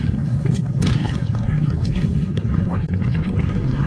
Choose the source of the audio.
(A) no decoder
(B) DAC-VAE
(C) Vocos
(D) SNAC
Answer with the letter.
D